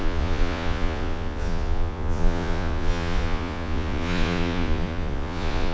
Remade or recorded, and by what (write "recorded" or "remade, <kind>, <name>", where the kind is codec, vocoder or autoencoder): remade, vocoder, Vocos